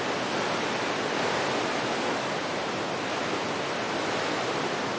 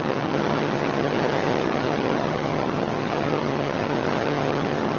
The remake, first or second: second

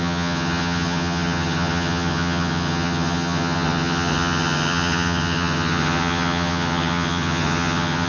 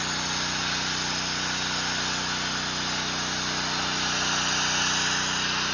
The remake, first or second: first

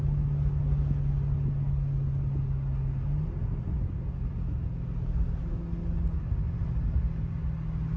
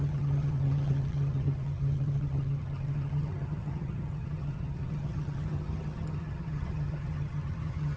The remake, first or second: second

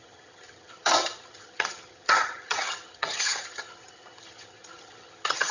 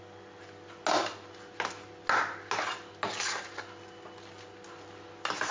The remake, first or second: first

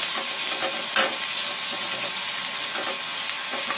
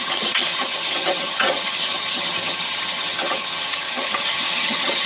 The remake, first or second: second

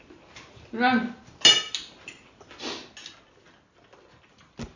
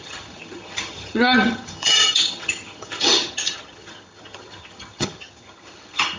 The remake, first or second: second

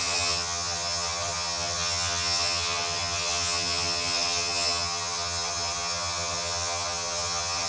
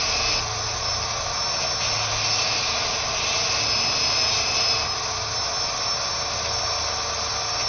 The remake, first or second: first